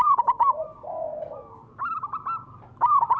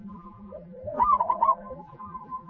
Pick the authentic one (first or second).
first